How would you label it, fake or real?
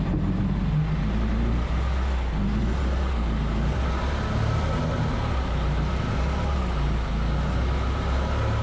real